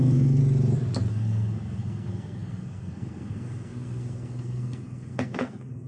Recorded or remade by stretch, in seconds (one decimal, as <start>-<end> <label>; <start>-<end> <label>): 0.0-0.4 remade; 0.4-1.1 recorded; 1.1-5.9 remade